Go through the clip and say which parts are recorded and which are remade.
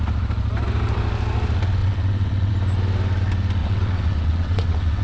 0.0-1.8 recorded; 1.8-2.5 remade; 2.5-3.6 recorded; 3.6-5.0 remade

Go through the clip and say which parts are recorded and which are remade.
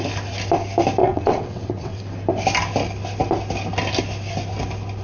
0.0-1.0 recorded; 1.0-2.0 remade; 2.0-5.0 recorded